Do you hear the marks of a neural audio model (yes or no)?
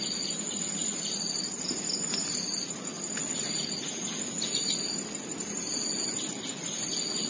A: no